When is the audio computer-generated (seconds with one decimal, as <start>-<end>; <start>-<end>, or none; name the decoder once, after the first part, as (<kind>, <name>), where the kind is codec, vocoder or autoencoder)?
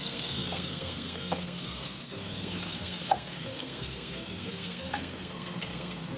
0.0-6.2 (codec, SNAC)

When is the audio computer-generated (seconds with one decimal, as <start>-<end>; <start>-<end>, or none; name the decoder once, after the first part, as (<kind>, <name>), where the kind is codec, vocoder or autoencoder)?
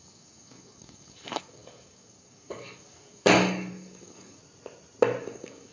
0.0-4.4 (codec, DAC); 5.2-5.7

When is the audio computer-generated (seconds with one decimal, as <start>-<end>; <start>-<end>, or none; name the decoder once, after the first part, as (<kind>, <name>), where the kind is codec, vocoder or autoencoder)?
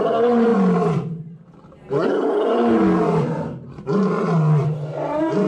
none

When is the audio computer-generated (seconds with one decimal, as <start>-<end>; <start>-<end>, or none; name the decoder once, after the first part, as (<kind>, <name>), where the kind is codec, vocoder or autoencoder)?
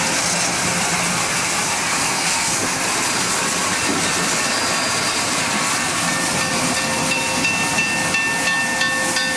2.0-2.8 (codec, SNAC)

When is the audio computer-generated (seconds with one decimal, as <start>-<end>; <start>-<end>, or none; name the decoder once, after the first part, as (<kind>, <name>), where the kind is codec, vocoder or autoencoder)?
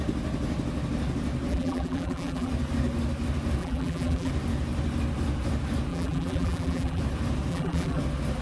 1.5-2.5 (vocoder, BigVGAN v2); 3.6-4.3; 5.9-7.0; 7.5-8.0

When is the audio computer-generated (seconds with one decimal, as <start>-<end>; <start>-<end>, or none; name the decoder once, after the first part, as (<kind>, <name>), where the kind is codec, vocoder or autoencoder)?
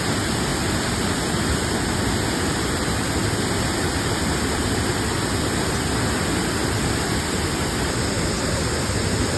none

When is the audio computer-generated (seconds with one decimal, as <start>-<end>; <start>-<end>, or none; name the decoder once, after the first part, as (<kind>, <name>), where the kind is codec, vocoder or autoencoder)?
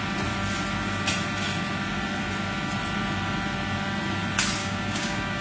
4.6-5.4 (codec, DAC)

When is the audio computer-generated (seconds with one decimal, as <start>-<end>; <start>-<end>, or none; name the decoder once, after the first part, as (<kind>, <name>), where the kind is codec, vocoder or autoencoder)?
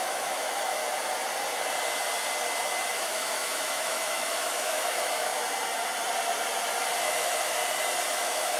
0.0-0.8 (autoencoder, DAC-VAE); 2.9-5.3; 7.0-7.6; 8.1-8.6